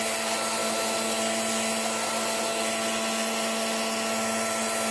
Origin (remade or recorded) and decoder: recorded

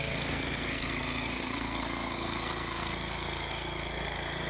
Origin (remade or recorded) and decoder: remade, codec, SNAC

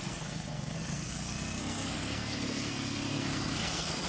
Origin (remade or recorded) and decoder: remade, codec, SNAC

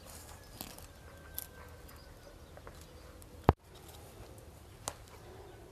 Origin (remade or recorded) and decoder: recorded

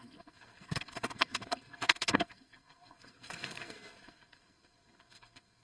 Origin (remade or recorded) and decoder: remade, codec, SNAC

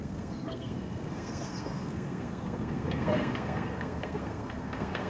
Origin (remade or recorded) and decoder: remade, codec, SNAC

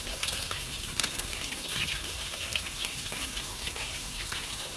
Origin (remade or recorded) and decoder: remade, codec, SNAC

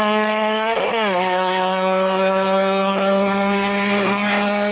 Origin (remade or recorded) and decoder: remade, codec, SNAC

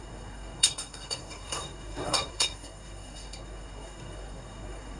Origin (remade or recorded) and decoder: remade, codec, SNAC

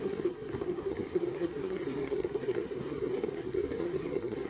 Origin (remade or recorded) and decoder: remade, codec, SNAC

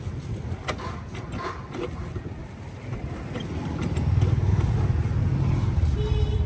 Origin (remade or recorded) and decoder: recorded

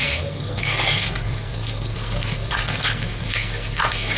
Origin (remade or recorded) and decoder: remade, codec, SNAC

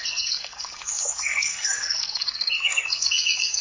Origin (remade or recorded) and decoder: remade, codec, SNAC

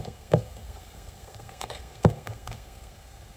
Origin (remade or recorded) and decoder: remade, codec, SNAC